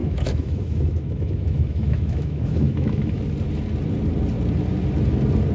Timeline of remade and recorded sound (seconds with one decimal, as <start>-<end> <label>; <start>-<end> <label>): 0.0-3.2 remade; 3.2-5.5 recorded